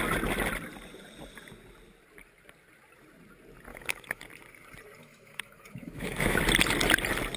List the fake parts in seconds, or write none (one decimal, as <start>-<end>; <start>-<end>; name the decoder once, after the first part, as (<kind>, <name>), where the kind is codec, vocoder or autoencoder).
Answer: 3.7-4.2 (autoencoder, DAC-VAE); 5.0-6.4